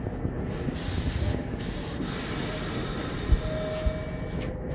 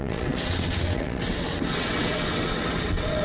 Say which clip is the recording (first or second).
first